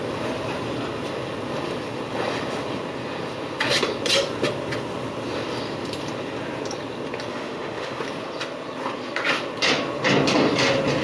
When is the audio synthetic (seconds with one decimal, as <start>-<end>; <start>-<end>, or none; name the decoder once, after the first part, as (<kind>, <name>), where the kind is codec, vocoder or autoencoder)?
7.3-8.0 (autoencoder, DAC-VAE)